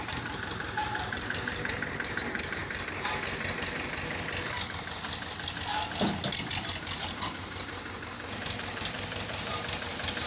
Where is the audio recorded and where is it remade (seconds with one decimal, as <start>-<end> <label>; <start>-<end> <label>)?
0.0-2.6 remade; 2.6-7.0 recorded; 7.0-10.3 remade